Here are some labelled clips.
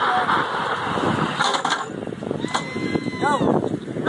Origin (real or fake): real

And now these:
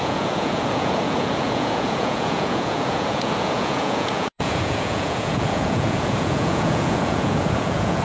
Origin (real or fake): fake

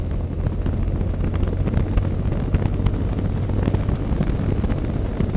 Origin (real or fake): real